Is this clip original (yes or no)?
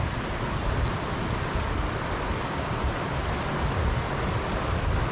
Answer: yes